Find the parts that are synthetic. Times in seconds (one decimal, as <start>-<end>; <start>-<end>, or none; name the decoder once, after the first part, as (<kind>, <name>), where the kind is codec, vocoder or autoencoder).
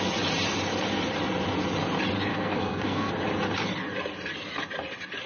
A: 2.3-3.1 (codec, SNAC)